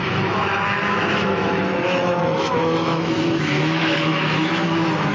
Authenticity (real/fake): fake